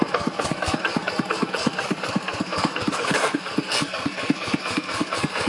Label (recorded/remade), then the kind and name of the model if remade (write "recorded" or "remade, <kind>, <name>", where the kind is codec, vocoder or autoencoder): remade, codec, SNAC